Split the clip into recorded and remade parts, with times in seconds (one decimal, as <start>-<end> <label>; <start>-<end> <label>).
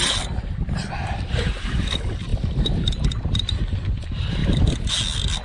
0.0-4.4 recorded; 4.4-4.9 remade; 4.9-5.4 recorded